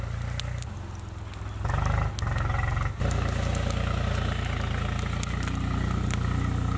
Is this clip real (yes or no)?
yes